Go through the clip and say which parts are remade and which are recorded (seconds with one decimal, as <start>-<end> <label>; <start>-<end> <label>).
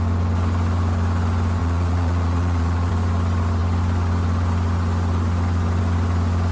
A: 0.0-1.6 recorded; 1.6-2.9 remade; 2.9-6.5 recorded